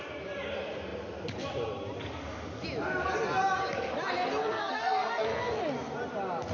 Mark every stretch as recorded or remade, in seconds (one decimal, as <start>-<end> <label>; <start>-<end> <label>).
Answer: 0.0-4.4 recorded; 4.4-5.6 remade; 5.6-6.5 recorded